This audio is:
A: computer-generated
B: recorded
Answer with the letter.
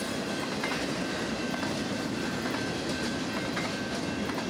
B